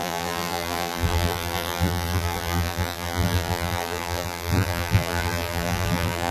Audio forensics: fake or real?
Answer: fake